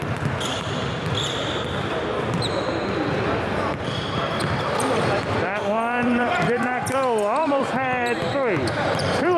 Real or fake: fake